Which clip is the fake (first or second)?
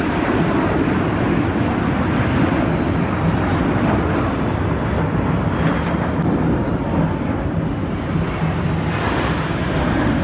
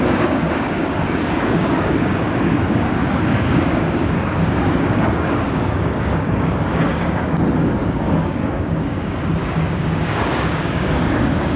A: second